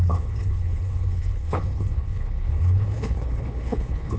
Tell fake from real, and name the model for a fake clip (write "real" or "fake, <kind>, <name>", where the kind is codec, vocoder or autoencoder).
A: fake, codec, HILCodec